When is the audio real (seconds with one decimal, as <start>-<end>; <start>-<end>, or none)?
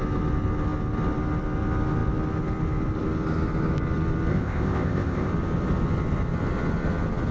0.0-4.3; 5.3-7.3